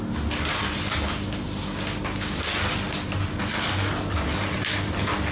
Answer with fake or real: real